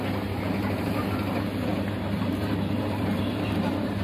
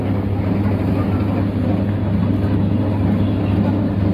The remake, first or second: first